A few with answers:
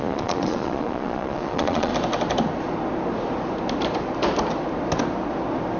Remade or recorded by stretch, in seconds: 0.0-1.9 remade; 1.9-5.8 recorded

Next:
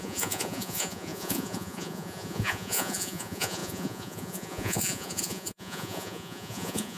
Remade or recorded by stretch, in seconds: 0.0-7.0 remade

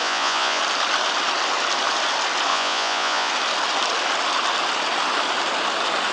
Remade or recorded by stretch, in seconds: 0.0-0.6 remade; 0.6-2.5 recorded; 2.5-3.3 remade; 3.3-6.1 recorded

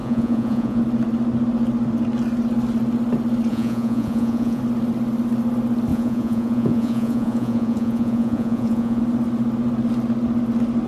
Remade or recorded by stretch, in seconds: 0.0-0.8 remade; 0.8-3.5 recorded; 3.5-4.6 remade; 4.6-5.9 recorded; 5.9-9.0 remade; 9.0-10.9 recorded